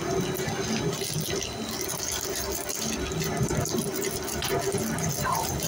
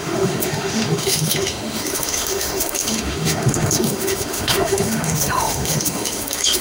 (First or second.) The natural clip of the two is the first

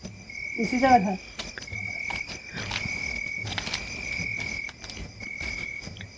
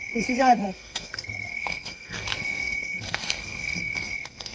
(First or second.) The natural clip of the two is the first